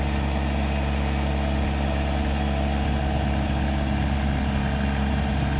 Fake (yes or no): no